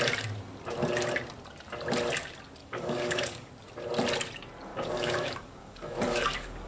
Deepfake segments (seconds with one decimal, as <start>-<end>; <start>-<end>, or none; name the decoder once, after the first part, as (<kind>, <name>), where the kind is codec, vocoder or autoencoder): 2.6-3.5 (codec, DAC); 4.7-6.7